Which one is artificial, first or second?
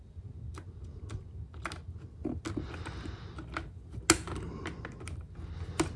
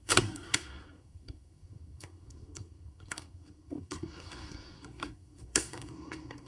second